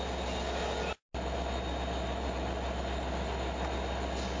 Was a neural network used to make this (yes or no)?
no